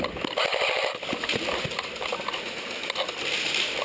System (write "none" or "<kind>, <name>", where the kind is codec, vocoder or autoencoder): none